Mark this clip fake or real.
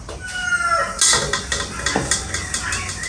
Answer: real